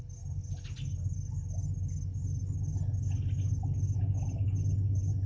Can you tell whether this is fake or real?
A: real